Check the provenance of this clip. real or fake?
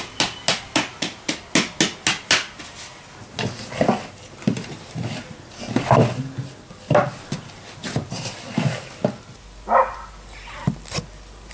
real